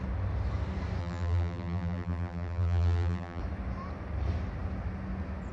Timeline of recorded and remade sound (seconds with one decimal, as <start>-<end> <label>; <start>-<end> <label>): 0.0-1.0 recorded; 1.0-3.4 remade; 3.4-5.5 recorded